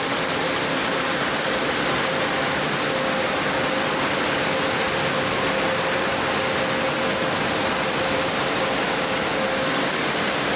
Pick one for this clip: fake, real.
real